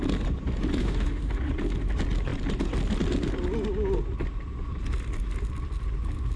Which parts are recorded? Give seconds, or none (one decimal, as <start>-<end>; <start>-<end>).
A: 0.0-0.8; 1.3-6.4

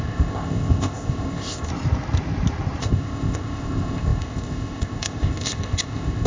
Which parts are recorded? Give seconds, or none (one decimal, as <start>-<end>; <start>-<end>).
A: 1.7-2.8

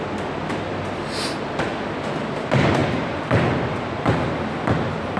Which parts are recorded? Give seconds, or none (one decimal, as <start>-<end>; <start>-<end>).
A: 0.0-5.2

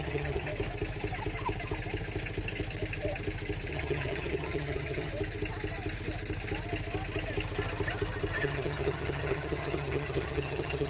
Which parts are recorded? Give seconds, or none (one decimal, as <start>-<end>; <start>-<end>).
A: 0.5-3.7; 5.1-8.4

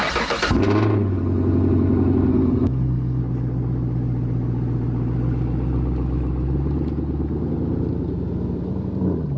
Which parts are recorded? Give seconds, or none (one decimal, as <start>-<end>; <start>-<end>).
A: 0.0-2.3; 3.2-9.4